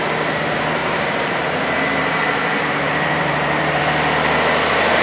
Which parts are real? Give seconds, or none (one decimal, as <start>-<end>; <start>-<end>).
0.0-0.8; 3.8-5.0